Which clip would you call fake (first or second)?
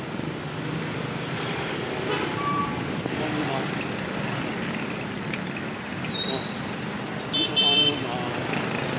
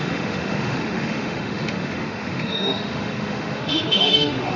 second